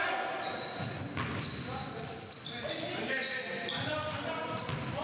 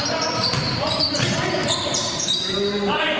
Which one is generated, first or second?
second